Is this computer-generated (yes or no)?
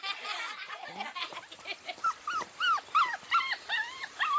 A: yes